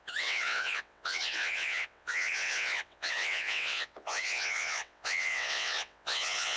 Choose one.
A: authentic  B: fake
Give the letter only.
B